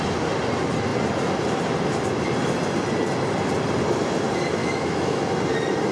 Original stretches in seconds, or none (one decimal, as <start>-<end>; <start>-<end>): 0.0-4.6; 5.2-5.9